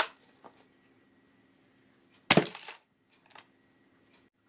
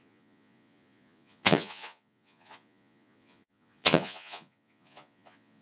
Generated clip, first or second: second